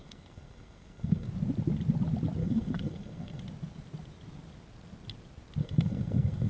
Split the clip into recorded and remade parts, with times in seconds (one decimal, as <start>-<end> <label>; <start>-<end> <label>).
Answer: 0.0-1.3 remade; 1.3-2.4 recorded; 2.4-3.4 remade; 3.4-5.6 recorded; 5.6-6.5 remade